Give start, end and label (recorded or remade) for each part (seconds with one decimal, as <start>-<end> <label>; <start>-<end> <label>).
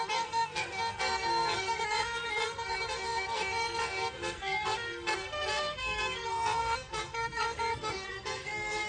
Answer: 0.0-8.9 remade